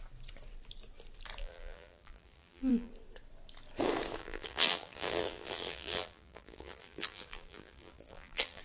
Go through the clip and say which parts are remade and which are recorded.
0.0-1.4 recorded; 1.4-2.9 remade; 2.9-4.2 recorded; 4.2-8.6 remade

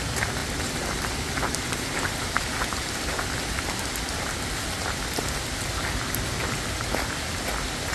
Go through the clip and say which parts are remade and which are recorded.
0.0-0.4 recorded; 0.4-5.1 remade; 5.1-7.9 recorded

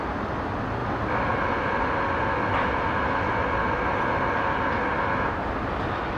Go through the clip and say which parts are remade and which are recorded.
0.0-6.2 recorded